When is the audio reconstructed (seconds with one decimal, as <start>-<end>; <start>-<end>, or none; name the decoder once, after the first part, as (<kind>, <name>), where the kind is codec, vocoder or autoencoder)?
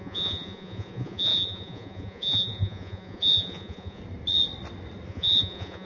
0.0-4.0 (vocoder, Vocos); 5.1-5.8